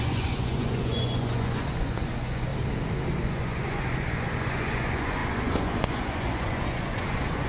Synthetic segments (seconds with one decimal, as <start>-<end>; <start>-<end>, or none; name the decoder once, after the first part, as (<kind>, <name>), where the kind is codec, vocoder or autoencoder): 0.0-2.5 (vocoder, Vocos); 3.2-7.5